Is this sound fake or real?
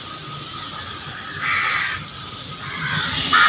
real